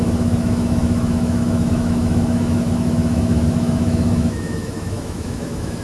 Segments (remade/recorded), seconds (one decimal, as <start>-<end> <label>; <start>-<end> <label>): 0.0-5.8 remade